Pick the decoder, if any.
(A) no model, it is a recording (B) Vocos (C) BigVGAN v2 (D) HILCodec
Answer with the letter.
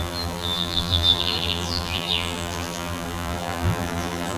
C